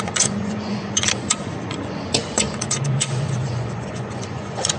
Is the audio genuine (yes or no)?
no